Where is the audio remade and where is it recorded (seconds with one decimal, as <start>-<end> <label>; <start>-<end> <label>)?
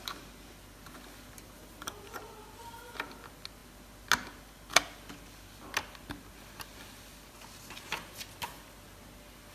0.0-9.5 recorded